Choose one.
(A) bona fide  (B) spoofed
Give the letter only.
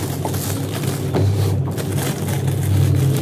A